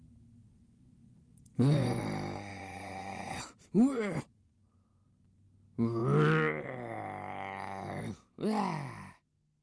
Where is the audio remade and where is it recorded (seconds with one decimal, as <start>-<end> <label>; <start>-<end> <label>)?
0.0-0.5 recorded; 0.5-2.0 remade; 2.0-2.5 recorded; 2.5-5.1 remade; 5.1-9.6 recorded